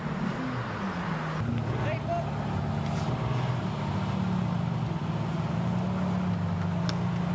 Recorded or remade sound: recorded